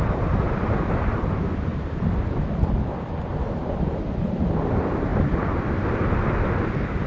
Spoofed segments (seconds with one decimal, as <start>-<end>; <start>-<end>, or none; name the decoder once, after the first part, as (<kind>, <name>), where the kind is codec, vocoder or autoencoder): 0.0-5.1 (vocoder, BigVGAN v2)

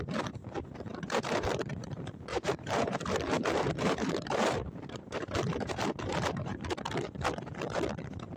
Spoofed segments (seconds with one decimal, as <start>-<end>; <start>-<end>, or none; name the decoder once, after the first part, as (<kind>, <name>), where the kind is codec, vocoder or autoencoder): 0.9-1.7 (vocoder, BigVGAN v2); 2.3-6.6